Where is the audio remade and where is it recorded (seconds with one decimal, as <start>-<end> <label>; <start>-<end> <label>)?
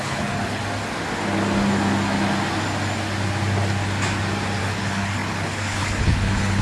0.0-0.6 remade; 0.6-4.6 recorded; 4.6-6.6 remade